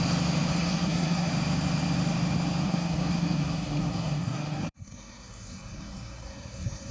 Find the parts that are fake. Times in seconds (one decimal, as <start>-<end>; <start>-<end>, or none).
0.5-1.3; 2.6-6.9